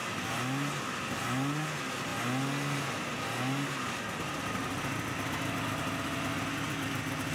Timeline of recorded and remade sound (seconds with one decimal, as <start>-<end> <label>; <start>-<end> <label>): 0.0-7.3 recorded

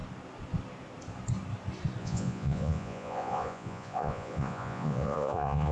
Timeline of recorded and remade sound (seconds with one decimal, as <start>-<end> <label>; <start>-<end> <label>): 0.0-2.0 recorded; 2.0-5.7 remade

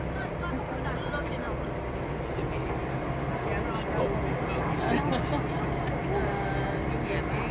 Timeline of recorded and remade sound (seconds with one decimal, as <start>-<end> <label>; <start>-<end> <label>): 0.0-7.5 recorded

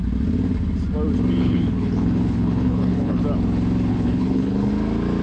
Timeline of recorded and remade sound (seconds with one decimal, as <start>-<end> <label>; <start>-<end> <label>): 0.0-1.4 recorded; 1.4-3.2 remade; 3.2-3.9 recorded; 3.9-4.7 remade; 4.7-5.2 recorded

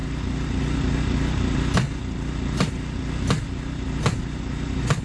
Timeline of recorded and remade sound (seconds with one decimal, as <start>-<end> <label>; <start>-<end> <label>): 0.0-5.0 recorded

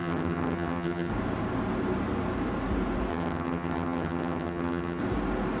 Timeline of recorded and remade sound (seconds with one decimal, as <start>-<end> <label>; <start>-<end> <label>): 0.0-1.1 remade; 1.1-3.1 recorded; 3.1-5.0 remade; 5.0-5.6 recorded